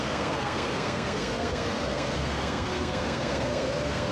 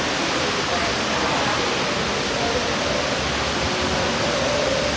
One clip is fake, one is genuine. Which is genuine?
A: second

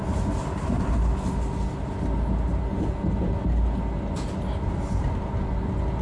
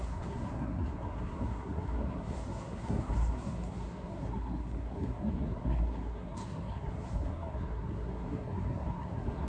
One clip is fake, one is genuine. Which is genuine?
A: first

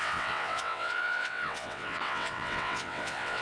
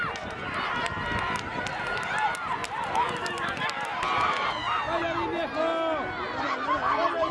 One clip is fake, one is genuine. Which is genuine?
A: second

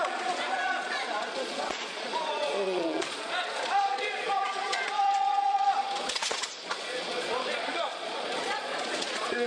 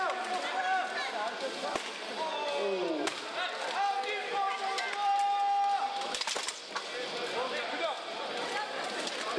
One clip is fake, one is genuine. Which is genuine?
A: second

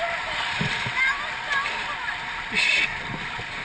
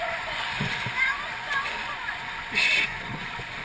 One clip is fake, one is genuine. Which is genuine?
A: first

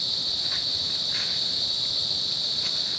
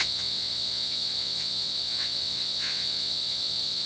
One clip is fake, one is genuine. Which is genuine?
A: first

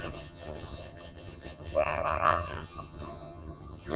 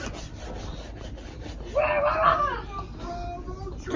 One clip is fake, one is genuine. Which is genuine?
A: second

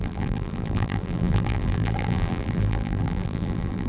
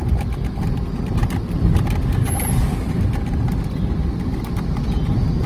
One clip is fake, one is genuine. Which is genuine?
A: second